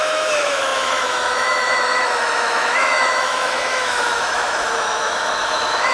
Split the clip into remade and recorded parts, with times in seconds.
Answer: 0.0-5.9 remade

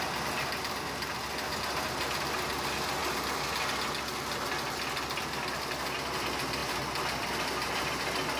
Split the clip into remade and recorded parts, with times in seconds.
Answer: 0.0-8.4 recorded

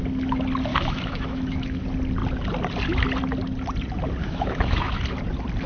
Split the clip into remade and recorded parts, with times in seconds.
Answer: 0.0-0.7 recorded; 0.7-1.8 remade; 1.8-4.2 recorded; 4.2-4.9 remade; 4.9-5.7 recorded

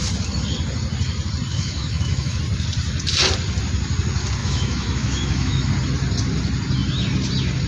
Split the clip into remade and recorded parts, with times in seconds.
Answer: 0.0-1.5 recorded; 1.5-2.4 remade; 2.4-4.4 recorded; 4.4-5.7 remade; 5.7-7.7 recorded